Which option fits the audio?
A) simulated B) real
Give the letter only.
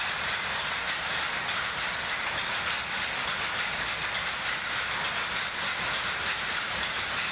B